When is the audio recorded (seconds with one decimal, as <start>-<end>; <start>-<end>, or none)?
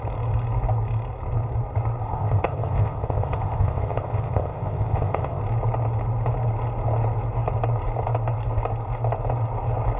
0.0-2.0; 5.4-10.0